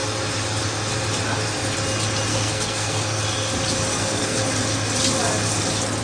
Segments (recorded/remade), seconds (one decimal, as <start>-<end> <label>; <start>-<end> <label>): 0.0-2.3 recorded; 2.3-3.2 remade; 3.2-3.9 recorded; 3.9-4.4 remade; 4.4-6.0 recorded